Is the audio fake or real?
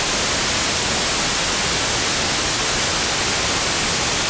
real